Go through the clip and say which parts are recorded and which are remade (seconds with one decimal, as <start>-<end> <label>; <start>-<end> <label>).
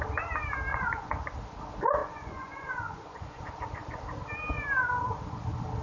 0.0-0.7 recorded; 0.7-1.2 remade; 1.2-2.0 recorded; 2.0-3.4 remade; 3.4-5.8 recorded